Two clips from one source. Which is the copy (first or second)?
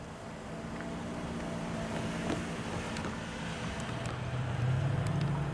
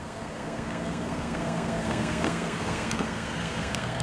second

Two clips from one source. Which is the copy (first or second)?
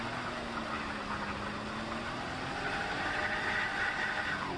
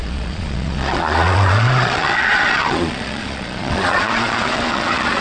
second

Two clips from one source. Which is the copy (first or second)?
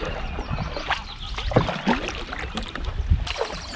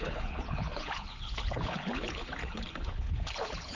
second